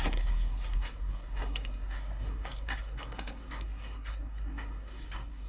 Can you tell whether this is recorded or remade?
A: remade